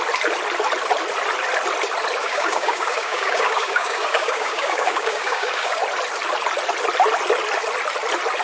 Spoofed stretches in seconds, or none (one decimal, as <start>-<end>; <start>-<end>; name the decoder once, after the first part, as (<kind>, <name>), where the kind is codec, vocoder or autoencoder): 2.2-5.8 (codec, DAC)